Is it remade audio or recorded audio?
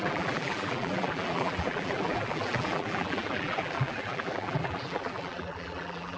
remade